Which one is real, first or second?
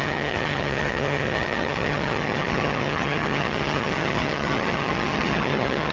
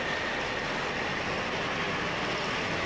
second